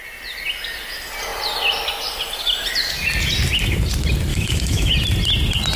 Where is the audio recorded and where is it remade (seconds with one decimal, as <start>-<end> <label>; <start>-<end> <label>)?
0.0-4.3 recorded; 4.3-4.9 remade; 4.9-5.8 recorded

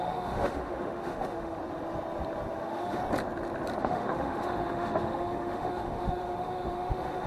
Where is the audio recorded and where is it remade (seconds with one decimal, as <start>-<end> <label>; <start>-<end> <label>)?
0.0-1.6 remade; 1.6-2.5 recorded; 2.5-3.0 remade; 3.0-3.8 recorded; 3.8-7.3 remade

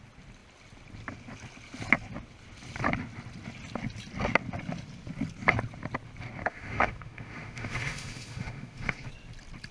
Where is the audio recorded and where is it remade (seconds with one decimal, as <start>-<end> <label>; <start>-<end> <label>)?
0.0-6.4 recorded; 6.4-9.1 remade; 9.1-9.7 recorded

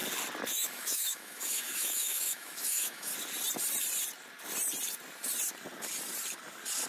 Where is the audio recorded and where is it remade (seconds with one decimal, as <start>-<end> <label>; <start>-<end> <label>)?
0.0-0.5 recorded; 0.5-3.1 remade; 3.1-6.9 recorded

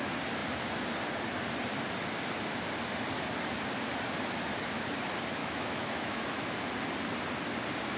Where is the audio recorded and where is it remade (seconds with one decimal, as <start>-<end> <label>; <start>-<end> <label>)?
0.0-5.4 recorded; 5.4-6.5 remade; 6.5-8.0 recorded

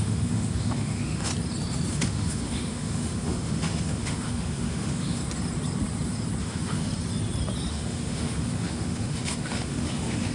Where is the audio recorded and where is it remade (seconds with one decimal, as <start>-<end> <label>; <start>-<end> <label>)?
0.0-1.3 remade; 1.3-1.9 recorded; 1.9-5.2 remade; 5.2-6.4 recorded; 6.4-6.9 remade; 6.9-7.7 recorded; 7.7-10.3 remade